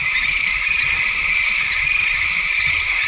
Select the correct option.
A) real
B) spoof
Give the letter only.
A